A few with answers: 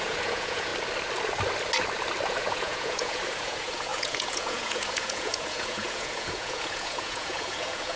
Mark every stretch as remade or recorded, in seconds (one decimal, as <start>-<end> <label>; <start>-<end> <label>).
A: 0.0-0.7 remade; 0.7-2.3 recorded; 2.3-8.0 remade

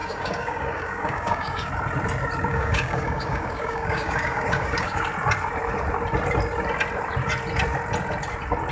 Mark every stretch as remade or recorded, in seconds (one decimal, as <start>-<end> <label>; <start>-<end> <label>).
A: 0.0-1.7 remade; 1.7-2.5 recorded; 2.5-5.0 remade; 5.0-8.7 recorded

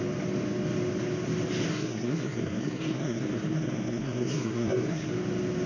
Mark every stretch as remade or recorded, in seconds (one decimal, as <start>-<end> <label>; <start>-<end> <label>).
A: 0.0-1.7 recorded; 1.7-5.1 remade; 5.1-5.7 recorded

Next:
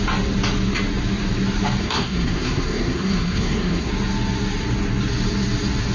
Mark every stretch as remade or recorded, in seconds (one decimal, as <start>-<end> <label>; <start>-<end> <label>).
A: 0.0-1.8 recorded; 1.8-3.9 remade; 3.9-5.9 recorded